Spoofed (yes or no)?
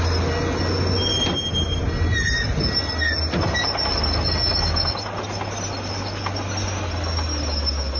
no